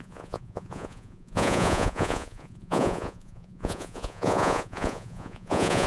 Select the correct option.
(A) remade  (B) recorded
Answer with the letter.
A